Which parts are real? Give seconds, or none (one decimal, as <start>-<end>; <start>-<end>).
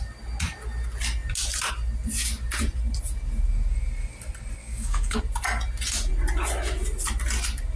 0.0-4.6; 5.2-7.8